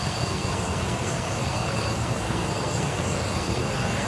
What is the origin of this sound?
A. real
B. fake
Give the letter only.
B